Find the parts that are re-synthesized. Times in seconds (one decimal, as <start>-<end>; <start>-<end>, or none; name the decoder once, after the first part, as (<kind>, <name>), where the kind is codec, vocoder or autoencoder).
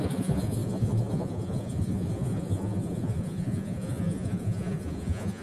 0.0-5.4 (vocoder, Vocos)